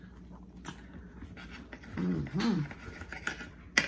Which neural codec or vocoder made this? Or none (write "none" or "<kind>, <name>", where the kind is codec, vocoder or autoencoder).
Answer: none